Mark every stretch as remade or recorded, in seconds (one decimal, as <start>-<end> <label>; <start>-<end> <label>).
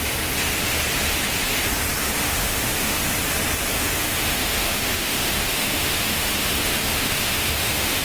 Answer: 0.0-2.0 recorded; 2.0-3.0 remade; 3.0-3.7 recorded; 3.7-8.0 remade